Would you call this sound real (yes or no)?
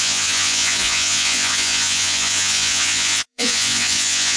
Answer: no